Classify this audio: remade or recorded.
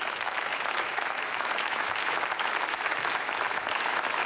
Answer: remade